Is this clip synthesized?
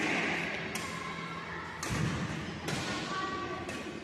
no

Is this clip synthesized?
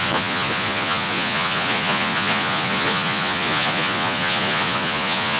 yes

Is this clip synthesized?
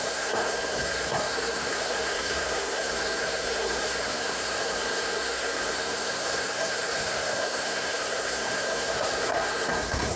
yes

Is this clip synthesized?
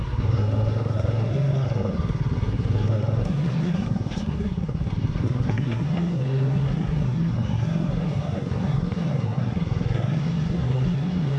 yes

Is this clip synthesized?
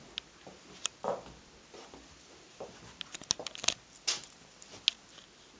no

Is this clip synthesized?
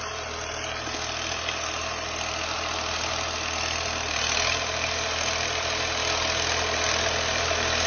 no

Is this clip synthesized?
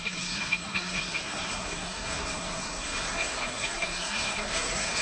yes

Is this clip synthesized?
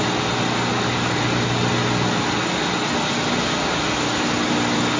no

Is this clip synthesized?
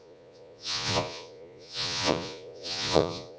yes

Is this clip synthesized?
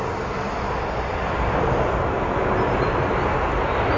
no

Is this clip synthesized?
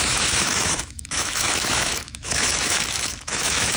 yes